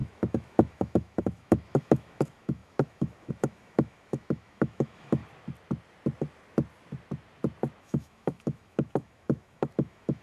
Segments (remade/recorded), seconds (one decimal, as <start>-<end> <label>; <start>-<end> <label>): 0.0-5.2 remade; 5.2-7.8 recorded; 7.8-10.2 remade

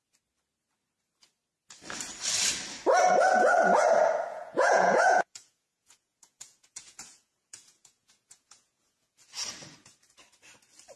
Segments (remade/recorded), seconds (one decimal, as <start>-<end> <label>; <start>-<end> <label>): 0.0-4.3 recorded; 4.3-9.1 remade; 9.1-11.0 recorded

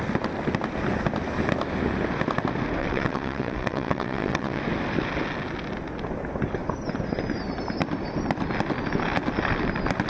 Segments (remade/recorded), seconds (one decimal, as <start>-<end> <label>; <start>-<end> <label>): 0.0-2.8 recorded; 2.8-4.6 remade; 4.6-10.1 recorded

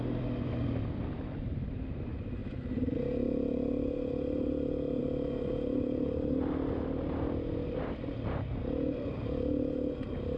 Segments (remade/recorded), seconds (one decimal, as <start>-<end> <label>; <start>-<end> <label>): 0.0-10.4 recorded

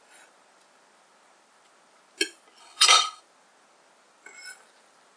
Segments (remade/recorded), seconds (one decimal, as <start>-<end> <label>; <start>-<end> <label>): 0.0-2.6 recorded; 2.6-3.2 remade; 3.2-5.2 recorded

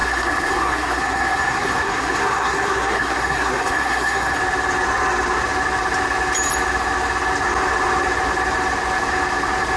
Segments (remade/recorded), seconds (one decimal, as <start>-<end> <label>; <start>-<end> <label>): 0.0-4.4 remade; 4.4-9.8 recorded